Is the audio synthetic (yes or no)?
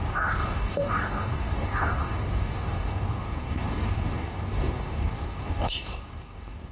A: yes